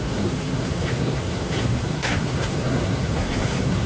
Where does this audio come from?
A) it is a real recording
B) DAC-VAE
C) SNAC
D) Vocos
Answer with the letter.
C